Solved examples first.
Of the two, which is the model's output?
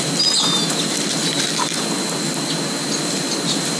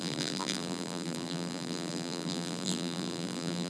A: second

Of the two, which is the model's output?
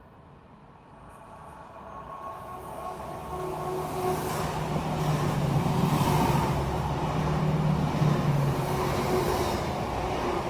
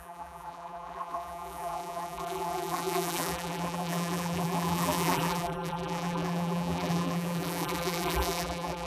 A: second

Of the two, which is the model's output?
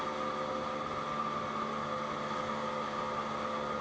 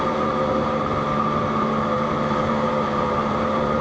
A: second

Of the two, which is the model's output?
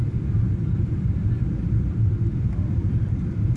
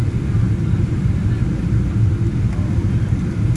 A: first